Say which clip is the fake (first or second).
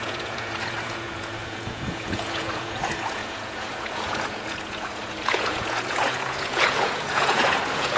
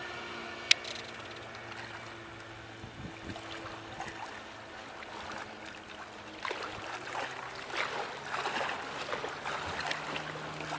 first